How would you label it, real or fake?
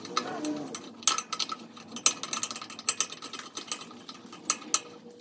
real